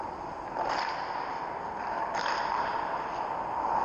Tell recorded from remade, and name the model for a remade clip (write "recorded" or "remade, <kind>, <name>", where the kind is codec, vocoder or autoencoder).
remade, vocoder, BigVGAN v2